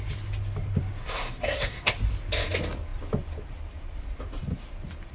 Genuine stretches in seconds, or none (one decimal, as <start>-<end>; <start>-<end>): 0.0-1.0; 1.9-5.1